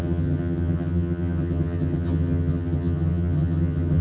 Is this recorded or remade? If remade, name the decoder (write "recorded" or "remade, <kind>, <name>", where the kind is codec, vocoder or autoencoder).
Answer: remade, vocoder, HiFi-GAN